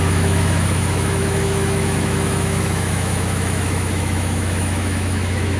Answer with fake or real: fake